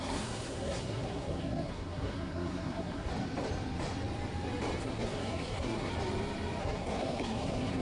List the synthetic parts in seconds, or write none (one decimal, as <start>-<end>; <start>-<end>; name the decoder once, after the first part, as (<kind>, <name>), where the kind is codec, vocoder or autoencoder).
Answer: 0.0-3.1 (codec, SNAC); 4.8-5.9; 6.6-7.8